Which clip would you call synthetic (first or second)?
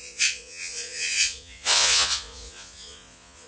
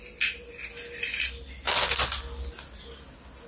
first